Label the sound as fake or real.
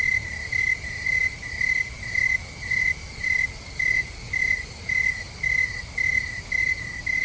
real